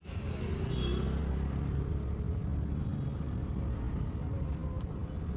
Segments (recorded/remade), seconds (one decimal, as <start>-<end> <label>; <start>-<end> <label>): 0.0-5.4 recorded